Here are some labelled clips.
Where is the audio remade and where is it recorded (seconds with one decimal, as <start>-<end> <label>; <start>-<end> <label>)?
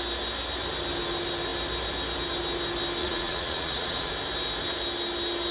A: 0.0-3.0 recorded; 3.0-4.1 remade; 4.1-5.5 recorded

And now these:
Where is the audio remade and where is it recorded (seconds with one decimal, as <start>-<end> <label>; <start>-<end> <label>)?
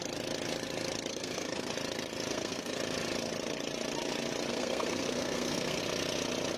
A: 0.0-1.1 recorded; 1.1-1.7 remade; 1.7-2.3 recorded; 2.3-2.8 remade; 2.8-4.5 recorded; 4.5-5.8 remade; 5.8-6.6 recorded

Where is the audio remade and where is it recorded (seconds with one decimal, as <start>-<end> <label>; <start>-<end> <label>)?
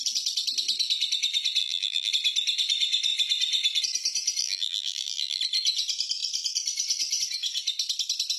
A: 0.0-1.6 recorded; 1.6-2.1 remade; 2.1-4.4 recorded; 4.4-5.4 remade; 5.4-8.4 recorded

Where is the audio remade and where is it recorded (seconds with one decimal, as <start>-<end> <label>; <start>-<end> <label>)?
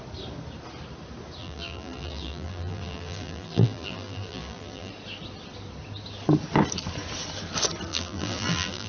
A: 0.0-1.4 recorded; 1.4-4.9 remade; 4.9-7.9 recorded; 7.9-8.9 remade